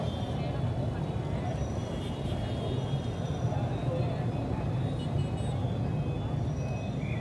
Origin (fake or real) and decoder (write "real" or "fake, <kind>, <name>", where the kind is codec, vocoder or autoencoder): real